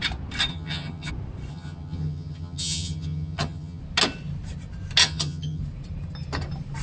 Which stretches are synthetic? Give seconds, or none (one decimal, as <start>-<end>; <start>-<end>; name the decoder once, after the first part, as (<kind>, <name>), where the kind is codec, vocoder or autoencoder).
0.5-1.1 (vocoder, HiFi-GAN); 1.5-3.8; 5.0-5.6